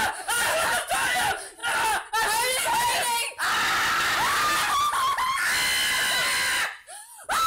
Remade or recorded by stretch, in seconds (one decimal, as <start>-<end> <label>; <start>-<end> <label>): 0.0-1.6 remade; 1.6-2.1 recorded; 2.1-2.9 remade; 2.9-7.1 recorded; 7.1-7.5 remade